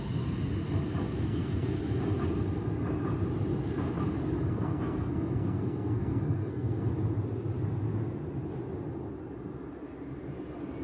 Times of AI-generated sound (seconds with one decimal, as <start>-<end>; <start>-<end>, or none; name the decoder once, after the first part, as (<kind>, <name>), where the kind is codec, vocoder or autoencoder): 1.0-1.8 (codec, SNAC); 4.4-6.9